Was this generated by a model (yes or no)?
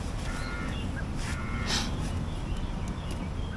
no